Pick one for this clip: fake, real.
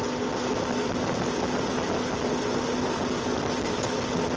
real